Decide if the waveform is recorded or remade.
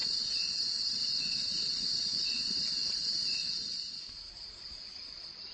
recorded